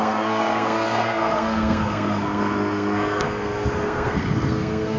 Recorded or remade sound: remade